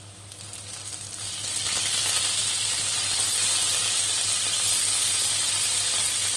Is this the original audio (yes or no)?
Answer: yes